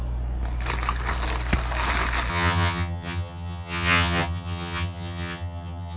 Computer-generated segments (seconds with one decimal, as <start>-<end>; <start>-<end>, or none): 2.3-6.0